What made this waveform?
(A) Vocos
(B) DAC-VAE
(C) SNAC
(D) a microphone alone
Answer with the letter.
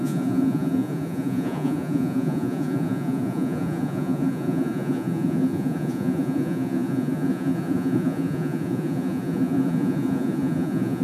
A